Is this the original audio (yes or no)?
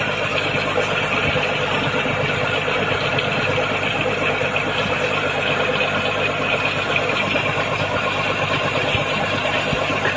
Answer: yes